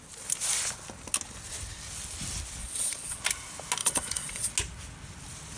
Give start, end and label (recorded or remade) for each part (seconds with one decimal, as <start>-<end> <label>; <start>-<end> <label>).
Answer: 0.0-2.6 recorded; 2.6-3.2 remade; 3.2-3.8 recorded; 3.8-4.5 remade; 4.5-5.6 recorded